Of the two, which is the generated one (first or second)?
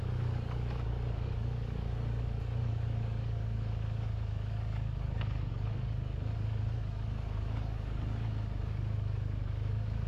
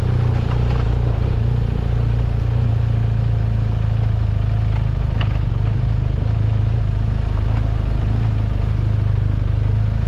first